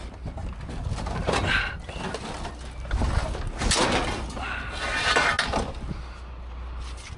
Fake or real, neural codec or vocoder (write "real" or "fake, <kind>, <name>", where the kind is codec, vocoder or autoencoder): real